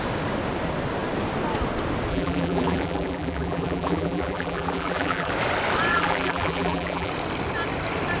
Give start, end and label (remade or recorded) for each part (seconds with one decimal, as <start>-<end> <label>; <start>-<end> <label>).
0.0-2.1 recorded; 2.1-5.3 remade; 5.3-5.9 recorded; 5.9-7.1 remade; 7.1-8.2 recorded